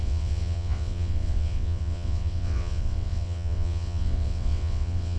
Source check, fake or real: fake